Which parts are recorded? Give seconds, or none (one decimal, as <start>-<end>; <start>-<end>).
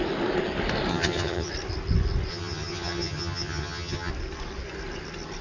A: 0.0-0.9; 1.5-2.3; 4.1-5.4